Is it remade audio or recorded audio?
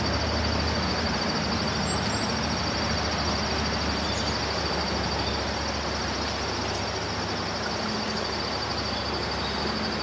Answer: recorded